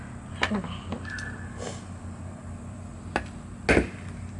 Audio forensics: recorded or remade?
recorded